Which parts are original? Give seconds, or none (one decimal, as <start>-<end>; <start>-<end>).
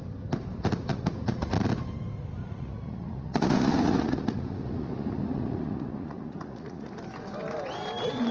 0.0-0.9; 1.6-2.4; 6.9-8.3